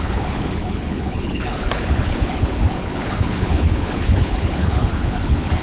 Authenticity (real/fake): fake